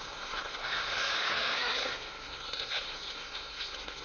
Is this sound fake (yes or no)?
yes